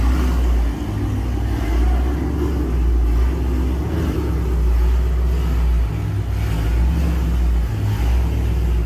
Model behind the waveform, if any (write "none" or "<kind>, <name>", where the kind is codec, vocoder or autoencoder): none